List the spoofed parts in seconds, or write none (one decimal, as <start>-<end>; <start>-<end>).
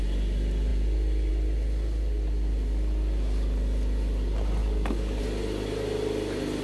4.6-5.2